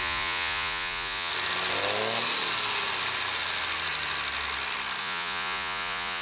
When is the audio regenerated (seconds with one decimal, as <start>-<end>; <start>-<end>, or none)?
0.0-1.3; 5.0-6.2